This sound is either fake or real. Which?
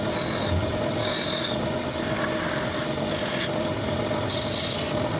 real